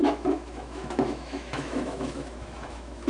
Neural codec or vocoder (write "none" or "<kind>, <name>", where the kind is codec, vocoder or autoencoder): autoencoder, DAC-VAE